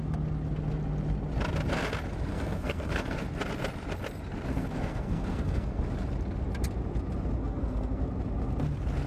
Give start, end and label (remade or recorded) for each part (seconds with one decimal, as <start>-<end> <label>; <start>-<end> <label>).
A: 0.0-2.3 recorded; 2.3-3.2 remade; 3.2-4.5 recorded; 4.5-5.8 remade; 5.8-7.4 recorded; 7.4-8.0 remade; 8.0-9.1 recorded

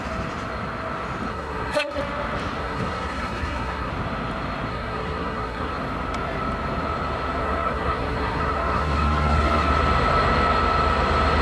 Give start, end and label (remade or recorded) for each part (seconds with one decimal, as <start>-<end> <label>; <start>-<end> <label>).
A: 0.0-1.3 recorded; 1.3-2.0 remade; 2.0-2.6 recorded; 2.6-3.9 remade; 3.9-4.7 recorded; 4.7-5.7 remade; 5.7-7.4 recorded; 7.4-9.7 remade; 9.7-11.4 recorded

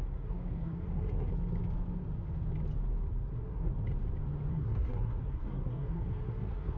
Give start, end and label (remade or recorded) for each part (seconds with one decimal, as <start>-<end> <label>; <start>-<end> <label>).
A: 0.0-1.3 remade; 1.3-3.3 recorded; 3.3-3.7 remade; 3.7-4.5 recorded; 4.5-6.8 remade

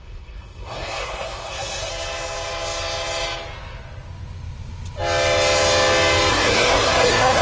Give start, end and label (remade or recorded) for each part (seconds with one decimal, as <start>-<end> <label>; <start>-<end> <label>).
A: 0.0-1.9 remade; 1.9-6.3 recorded; 6.3-7.4 remade

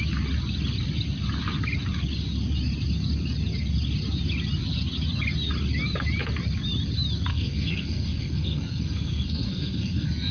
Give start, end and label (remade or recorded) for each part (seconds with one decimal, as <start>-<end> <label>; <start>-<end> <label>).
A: 0.0-7.3 recorded; 7.3-10.3 remade

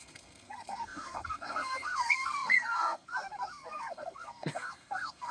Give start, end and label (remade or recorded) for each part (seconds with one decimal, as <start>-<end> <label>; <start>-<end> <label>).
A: 0.0-5.3 remade